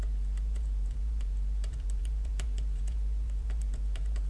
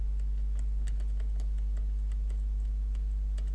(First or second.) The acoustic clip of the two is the second